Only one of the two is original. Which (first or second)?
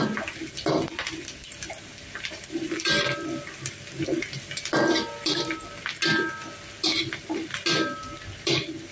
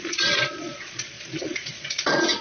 first